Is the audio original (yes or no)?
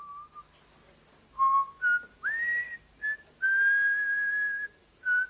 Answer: yes